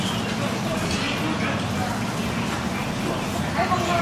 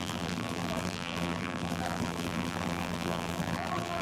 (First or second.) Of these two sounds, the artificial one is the second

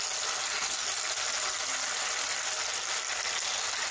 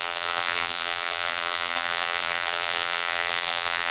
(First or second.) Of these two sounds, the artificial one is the second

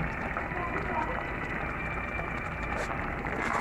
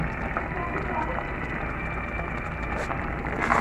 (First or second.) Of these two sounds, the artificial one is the first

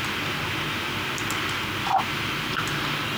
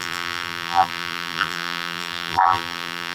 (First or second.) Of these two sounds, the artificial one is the second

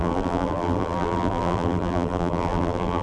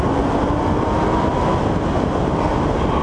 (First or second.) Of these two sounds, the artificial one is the first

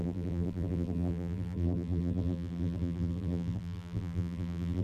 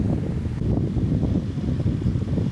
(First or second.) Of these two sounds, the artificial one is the first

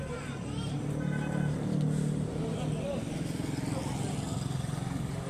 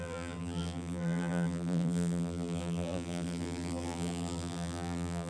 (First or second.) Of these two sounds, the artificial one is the second